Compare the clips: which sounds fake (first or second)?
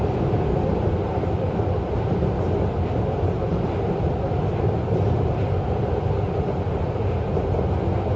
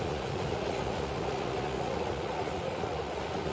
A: second